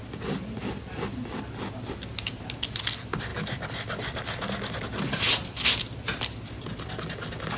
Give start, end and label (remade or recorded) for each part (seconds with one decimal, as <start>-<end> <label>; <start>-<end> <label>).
0.0-7.6 recorded